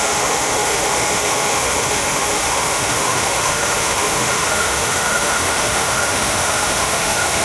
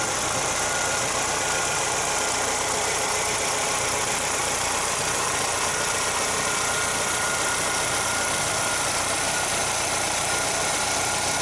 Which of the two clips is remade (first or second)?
first